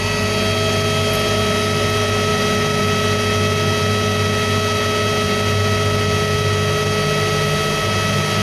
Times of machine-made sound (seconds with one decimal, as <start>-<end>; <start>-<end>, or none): none